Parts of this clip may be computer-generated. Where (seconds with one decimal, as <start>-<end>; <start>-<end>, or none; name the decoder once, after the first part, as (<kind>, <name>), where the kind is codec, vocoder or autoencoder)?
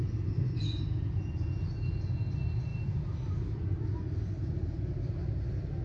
2.7-4.3 (vocoder, BigVGAN v2)